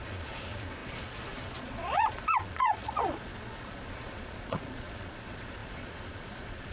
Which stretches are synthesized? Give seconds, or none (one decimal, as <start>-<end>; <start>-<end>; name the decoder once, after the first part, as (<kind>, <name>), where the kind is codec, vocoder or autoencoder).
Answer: 0.0-6.7 (vocoder, Vocos)